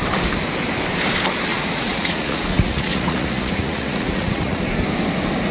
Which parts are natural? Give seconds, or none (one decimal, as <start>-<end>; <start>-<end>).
0.0-1.5; 4.6-5.5